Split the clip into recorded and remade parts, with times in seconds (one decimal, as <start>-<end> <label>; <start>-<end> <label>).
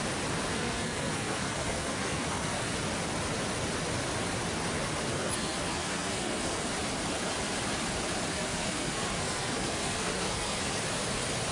0.0-0.5 recorded; 0.5-2.7 remade; 2.7-5.1 recorded; 5.1-6.7 remade; 6.7-8.3 recorded; 8.3-10.8 remade; 10.8-11.5 recorded